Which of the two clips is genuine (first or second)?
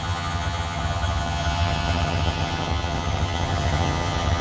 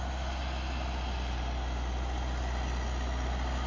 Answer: second